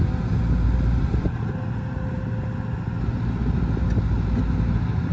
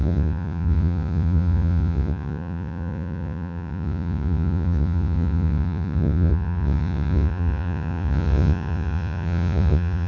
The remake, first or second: second